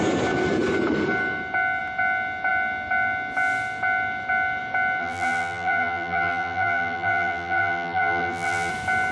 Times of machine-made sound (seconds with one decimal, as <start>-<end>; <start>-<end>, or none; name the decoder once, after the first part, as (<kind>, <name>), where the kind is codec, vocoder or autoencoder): 5.0-8.7 (vocoder, BigVGAN v2)